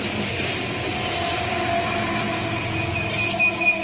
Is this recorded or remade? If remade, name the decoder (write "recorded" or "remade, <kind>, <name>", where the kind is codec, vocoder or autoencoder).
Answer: recorded